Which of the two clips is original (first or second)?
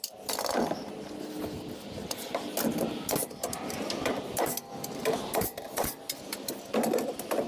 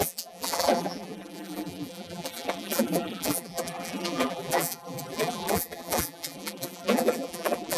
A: first